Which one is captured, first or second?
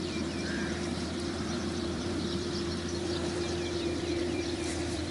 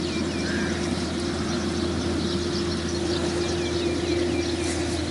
second